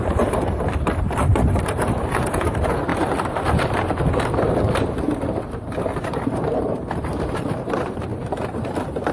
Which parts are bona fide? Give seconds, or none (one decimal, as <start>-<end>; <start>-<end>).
2.9-6.0